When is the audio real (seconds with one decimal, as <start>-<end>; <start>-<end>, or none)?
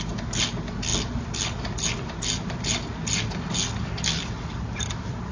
0.0-0.9; 2.4-4.0